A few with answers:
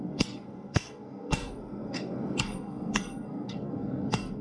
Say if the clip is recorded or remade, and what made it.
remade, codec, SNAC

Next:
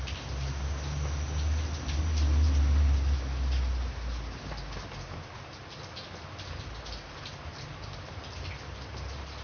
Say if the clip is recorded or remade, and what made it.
recorded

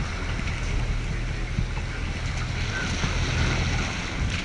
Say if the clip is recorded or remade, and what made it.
recorded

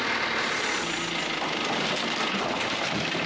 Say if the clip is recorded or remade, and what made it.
recorded